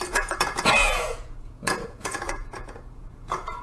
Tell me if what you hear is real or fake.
fake